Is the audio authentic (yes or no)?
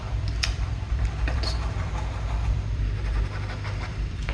no